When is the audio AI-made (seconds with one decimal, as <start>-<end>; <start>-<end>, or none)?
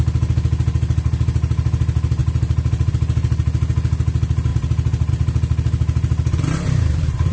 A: 2.2-2.9; 4.5-5.1